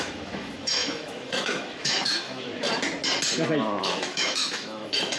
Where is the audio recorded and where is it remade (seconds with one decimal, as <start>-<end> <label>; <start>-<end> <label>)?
0.0-2.5 remade; 2.5-3.8 recorded; 3.8-5.2 remade